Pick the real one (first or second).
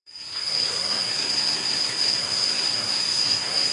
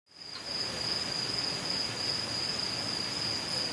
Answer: second